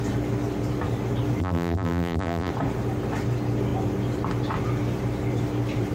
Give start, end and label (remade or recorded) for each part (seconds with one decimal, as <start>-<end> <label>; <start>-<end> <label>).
0.0-1.4 recorded; 1.4-2.5 remade; 2.5-5.9 recorded

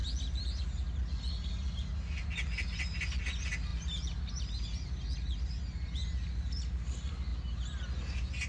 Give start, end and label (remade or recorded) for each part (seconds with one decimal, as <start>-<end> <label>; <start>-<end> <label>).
0.0-8.5 recorded

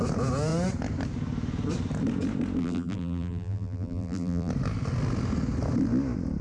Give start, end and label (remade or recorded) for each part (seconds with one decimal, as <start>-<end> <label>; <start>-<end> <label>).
0.0-2.6 recorded; 2.6-4.5 remade; 4.5-6.4 recorded

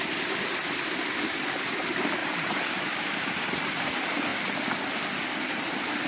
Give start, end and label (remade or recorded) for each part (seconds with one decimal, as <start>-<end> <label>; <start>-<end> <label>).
0.0-2.2 recorded; 2.2-3.7 remade; 3.7-4.3 recorded; 4.3-5.0 remade; 5.0-6.1 recorded

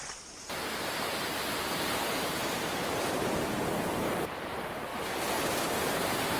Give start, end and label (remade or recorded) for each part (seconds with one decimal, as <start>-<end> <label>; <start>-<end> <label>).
0.0-4.9 remade; 4.9-5.8 recorded; 5.8-6.4 remade

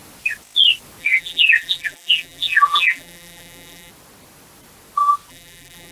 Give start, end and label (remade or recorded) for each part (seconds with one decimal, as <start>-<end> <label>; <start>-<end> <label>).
0.0-1.0 recorded; 1.0-3.9 remade; 3.9-5.3 recorded; 5.3-5.9 remade